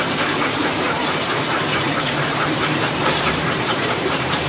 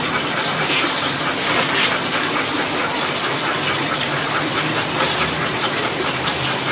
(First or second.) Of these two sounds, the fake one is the first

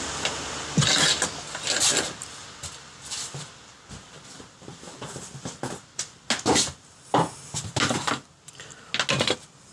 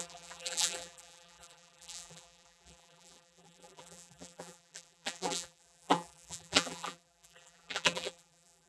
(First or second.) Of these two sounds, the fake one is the second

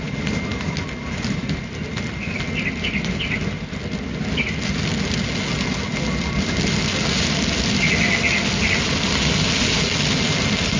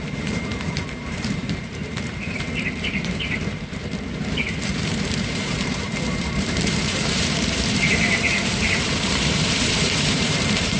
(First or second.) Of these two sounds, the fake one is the second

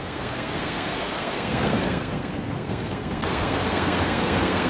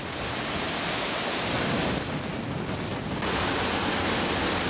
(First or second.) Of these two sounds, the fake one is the first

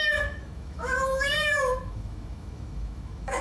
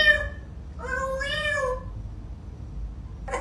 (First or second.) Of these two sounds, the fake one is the first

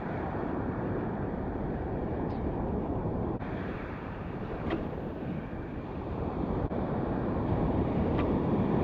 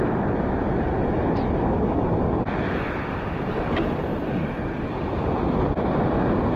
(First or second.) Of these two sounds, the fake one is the first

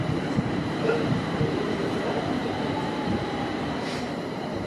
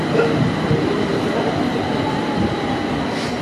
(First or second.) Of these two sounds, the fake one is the first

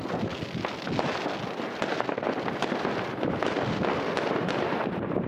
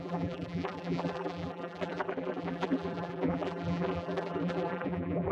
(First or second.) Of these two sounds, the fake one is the second